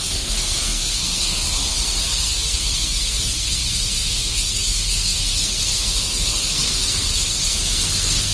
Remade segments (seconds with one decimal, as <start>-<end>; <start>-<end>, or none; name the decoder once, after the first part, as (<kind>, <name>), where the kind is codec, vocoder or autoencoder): 0.0-8.3 (codec, SNAC)